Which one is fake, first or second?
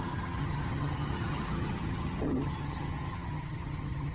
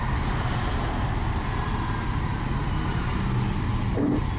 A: first